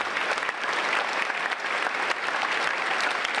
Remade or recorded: recorded